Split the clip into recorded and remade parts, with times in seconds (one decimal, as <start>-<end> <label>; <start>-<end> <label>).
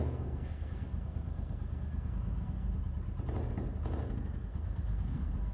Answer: 0.0-2.7 remade; 2.7-4.0 recorded; 4.0-5.5 remade